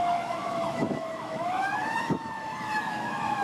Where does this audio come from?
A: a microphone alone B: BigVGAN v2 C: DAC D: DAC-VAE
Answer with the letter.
D